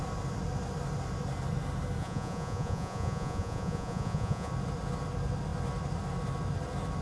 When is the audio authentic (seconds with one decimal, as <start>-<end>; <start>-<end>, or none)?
0.0-2.0; 4.5-7.0